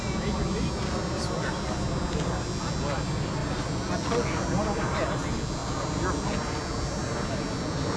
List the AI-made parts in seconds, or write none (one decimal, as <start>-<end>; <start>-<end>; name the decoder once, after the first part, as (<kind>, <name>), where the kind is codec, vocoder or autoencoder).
none